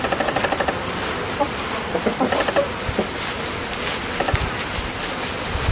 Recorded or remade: recorded